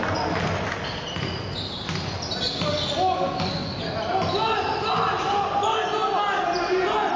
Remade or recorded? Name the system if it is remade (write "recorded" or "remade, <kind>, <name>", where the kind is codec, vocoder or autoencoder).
recorded